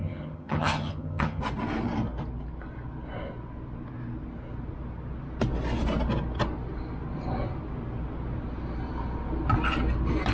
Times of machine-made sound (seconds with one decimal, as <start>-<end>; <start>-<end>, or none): 0.0-1.4